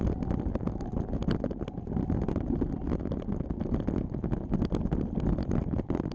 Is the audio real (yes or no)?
yes